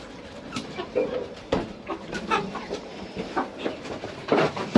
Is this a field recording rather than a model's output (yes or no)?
no